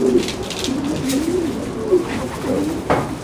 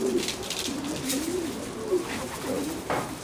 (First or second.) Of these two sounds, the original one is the first